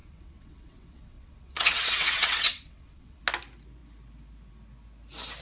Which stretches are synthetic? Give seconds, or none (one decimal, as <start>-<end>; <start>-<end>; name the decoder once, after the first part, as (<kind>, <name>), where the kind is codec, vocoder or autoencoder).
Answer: 0.0-3.2 (vocoder, WaveNeXt)

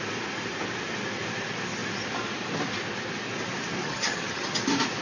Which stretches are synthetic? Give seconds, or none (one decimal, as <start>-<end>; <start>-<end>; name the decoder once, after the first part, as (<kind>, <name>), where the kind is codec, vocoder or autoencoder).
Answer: 3.8-4.6 (vocoder, HiFi-GAN)

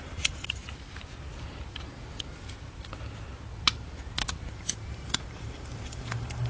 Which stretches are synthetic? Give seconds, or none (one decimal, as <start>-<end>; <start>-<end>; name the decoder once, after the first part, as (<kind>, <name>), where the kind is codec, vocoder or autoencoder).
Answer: 0.0-0.6 (vocoder, BigVGAN v2); 4.5-6.5

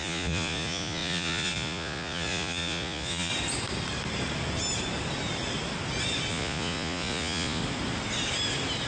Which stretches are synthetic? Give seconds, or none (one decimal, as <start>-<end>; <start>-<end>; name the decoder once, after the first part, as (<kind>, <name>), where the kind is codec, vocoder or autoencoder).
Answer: 0.0-3.3 (vocoder, Vocos); 6.3-7.6

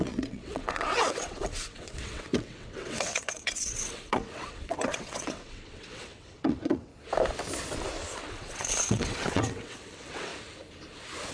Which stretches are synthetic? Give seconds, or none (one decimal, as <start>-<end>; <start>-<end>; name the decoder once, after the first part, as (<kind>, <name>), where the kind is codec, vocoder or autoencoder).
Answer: 0.0-6.9 (vocoder, WaveNeXt); 8.3-10.3

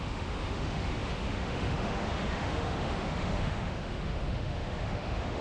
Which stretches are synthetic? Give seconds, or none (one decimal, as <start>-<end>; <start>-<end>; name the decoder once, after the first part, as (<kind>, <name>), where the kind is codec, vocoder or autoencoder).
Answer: 0.0-5.4 (autoencoder, DAC-VAE)